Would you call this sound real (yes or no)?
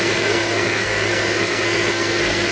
no